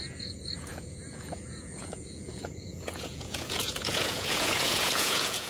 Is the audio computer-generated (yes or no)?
yes